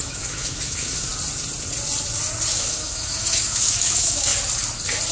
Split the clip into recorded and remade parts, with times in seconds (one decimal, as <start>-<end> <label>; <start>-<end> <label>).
0.0-1.1 remade; 1.1-2.5 recorded; 2.5-4.3 remade; 4.3-5.1 recorded